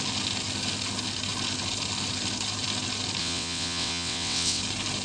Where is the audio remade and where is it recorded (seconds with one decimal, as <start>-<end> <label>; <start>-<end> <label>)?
0.0-3.2 recorded; 3.2-4.6 remade; 4.6-5.0 recorded